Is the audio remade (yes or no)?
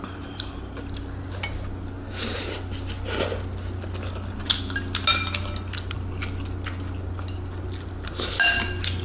no